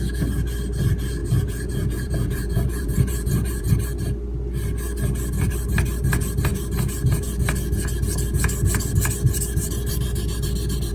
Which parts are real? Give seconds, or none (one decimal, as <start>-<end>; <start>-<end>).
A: 0.0-1.2; 3.7-10.9